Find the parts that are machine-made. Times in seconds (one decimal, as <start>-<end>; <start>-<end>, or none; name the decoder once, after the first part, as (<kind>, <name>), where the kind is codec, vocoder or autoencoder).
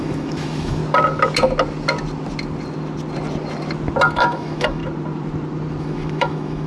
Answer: 0.0-0.8 (autoencoder, DAC-VAE); 4.2-4.8; 5.8-6.7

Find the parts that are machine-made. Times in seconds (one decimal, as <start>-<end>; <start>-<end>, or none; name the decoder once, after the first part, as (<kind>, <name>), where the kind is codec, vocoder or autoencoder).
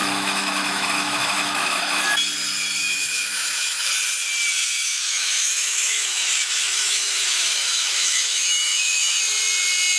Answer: 0.0-2.0 (autoencoder, DAC-VAE); 2.8-3.9; 4.6-9.2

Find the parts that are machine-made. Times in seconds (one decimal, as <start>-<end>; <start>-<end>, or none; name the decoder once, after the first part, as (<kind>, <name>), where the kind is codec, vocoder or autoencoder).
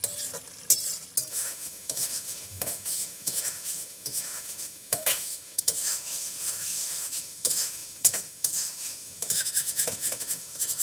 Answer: 1.3-10.8 (autoencoder, DAC-VAE)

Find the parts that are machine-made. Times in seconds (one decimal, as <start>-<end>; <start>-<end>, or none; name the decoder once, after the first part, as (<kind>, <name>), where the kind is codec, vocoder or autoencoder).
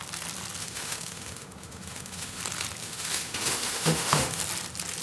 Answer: 0.6-2.4 (autoencoder, DAC-VAE); 2.8-4.4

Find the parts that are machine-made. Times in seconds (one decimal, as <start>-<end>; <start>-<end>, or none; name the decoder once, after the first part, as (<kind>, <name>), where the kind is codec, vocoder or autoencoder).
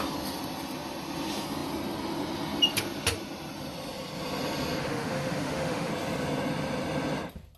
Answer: 4.8-5.9 (autoencoder, DAC-VAE)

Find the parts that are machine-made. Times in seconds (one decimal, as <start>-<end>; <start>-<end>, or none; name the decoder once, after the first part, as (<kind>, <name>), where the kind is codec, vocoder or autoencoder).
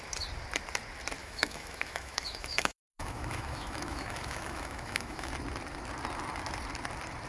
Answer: 1.2-5.3 (autoencoder, DAC-VAE)